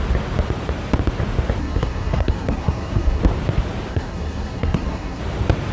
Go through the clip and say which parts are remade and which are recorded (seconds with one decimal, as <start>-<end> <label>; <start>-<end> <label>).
0.0-1.6 recorded; 1.6-3.2 remade; 3.2-3.9 recorded; 3.9-5.2 remade; 5.2-5.7 recorded